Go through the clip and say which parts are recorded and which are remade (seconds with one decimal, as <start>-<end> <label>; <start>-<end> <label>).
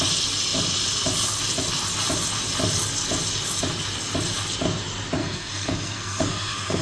0.0-5.2 recorded; 5.2-6.8 remade